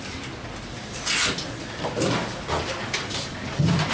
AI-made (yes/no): no